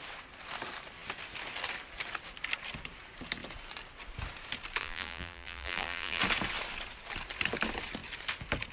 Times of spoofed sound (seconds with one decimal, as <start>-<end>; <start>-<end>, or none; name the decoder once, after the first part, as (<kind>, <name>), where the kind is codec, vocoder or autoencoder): 4.8-6.2 (vocoder, BigVGAN v2)